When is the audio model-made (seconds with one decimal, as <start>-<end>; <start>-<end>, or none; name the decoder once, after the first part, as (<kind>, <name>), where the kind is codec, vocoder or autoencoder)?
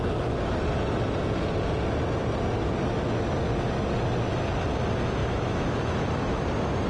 5.2-6.4 (autoencoder, DAC-VAE)